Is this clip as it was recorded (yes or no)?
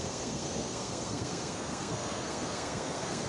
no